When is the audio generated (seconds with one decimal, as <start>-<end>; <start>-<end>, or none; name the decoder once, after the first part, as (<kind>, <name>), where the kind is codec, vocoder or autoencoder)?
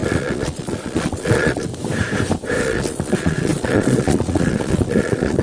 0.0-1.7 (vocoder, Vocos); 2.6-5.4